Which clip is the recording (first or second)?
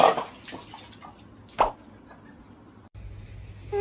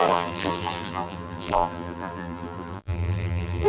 first